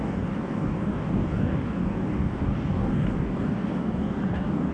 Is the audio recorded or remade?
remade